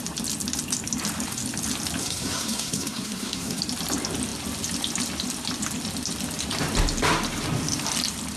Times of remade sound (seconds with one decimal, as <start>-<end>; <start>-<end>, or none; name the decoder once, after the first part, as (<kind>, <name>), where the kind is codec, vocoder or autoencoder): 2.0-3.6 (codec, SNAC)